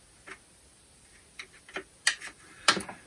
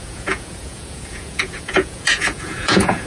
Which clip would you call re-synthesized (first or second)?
second